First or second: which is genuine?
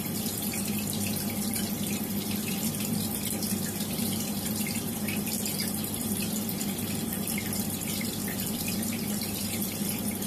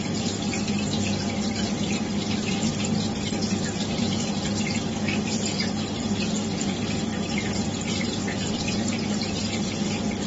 second